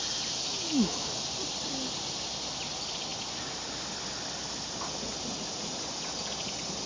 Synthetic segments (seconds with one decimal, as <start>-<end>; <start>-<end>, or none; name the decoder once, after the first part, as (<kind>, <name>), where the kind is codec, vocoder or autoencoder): 0.5-1.1 (autoencoder, DAC-VAE)